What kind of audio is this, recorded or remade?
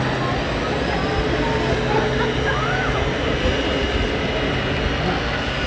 recorded